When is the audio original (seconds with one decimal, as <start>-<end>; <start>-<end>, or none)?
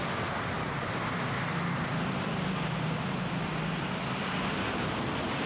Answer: 0.0-5.5